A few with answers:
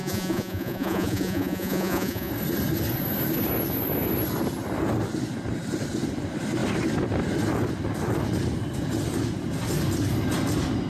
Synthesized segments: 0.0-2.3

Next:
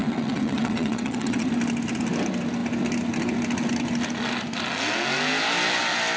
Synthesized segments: 0.0-1.5

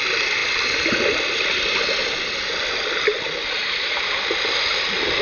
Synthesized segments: none

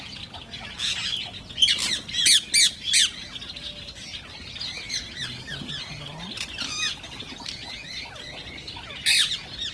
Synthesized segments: none